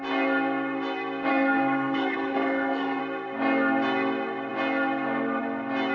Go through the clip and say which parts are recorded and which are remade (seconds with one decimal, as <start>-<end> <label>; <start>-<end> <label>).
0.0-1.3 recorded; 1.3-3.0 remade; 3.0-5.9 recorded